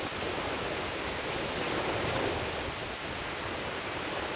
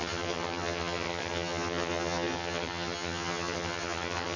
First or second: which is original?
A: first